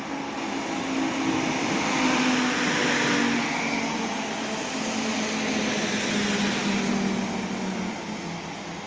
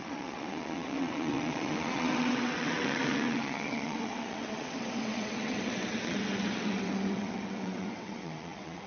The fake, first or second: second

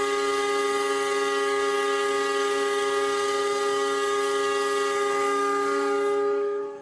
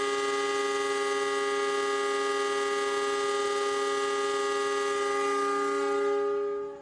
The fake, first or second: first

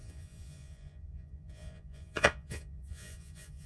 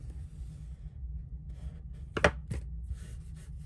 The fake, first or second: first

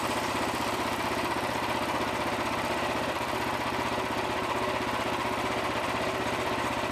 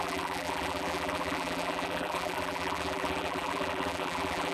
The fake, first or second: second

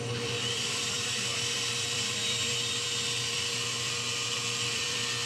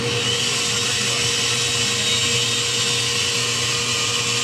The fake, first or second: first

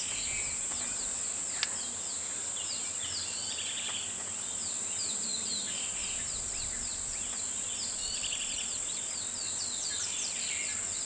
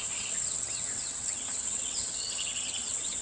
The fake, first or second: second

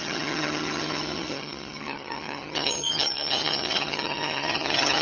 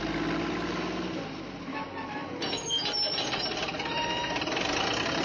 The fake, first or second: first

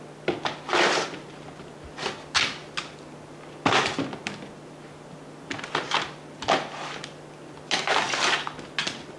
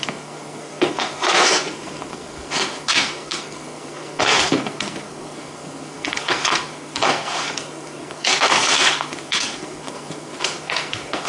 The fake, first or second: second